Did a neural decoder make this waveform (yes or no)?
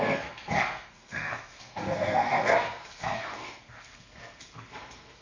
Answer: yes